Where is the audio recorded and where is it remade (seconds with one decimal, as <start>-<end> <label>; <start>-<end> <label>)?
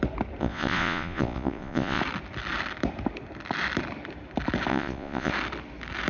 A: 0.0-0.4 recorded; 0.4-2.0 remade; 2.0-4.7 recorded; 4.7-5.3 remade; 5.3-6.1 recorded